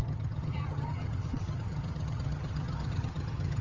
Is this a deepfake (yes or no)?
yes